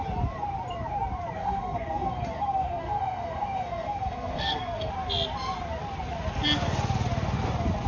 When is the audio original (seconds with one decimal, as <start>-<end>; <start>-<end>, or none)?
0.0-1.4; 4.9-7.9